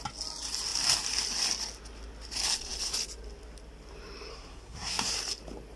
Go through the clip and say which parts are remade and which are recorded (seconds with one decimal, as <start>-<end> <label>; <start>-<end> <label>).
0.0-4.3 recorded; 4.3-5.1 remade; 5.1-5.8 recorded